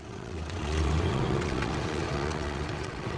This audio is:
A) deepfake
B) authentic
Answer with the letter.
A